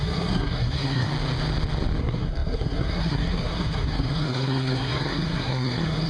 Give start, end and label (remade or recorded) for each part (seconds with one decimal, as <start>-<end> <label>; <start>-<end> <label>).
0.0-1.1 remade; 1.1-2.0 recorded; 2.0-6.1 remade